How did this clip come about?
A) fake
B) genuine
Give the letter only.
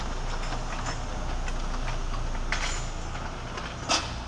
B